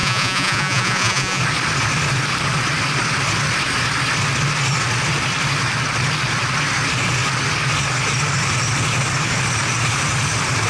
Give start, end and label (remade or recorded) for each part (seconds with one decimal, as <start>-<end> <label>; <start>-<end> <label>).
0.0-1.4 remade; 1.4-10.7 recorded